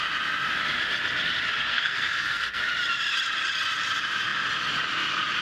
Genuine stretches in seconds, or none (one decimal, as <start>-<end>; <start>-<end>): 0.0-1.7; 2.6-5.4